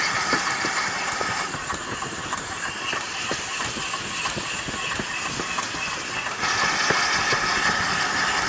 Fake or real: real